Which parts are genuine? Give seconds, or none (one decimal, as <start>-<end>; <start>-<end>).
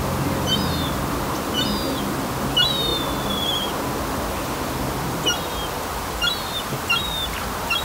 0.0-7.8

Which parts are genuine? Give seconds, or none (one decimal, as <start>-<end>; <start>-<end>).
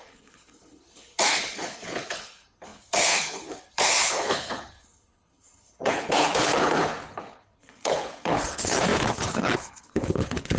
none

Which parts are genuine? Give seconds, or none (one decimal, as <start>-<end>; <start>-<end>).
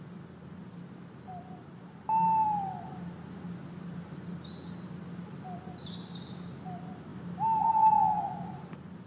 0.0-9.1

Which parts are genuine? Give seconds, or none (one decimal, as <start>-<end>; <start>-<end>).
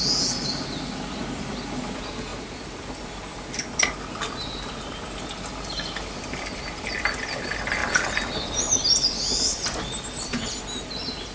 0.0-7.8; 10.6-11.3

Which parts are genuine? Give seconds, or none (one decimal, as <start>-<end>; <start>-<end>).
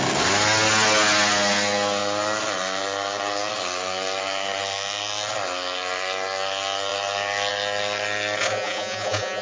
0.0-8.4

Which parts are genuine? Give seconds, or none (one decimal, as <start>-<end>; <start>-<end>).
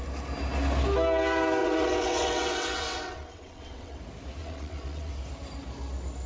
0.0-1.6; 4.0-4.4; 5.1-6.3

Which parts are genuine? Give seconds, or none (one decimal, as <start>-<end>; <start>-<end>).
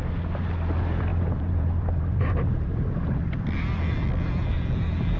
0.0-1.1; 2.8-5.2